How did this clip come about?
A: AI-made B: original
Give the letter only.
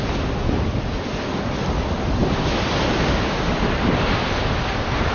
B